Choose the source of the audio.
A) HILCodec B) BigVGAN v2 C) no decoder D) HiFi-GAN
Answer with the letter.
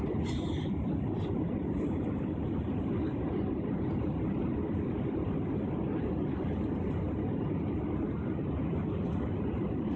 C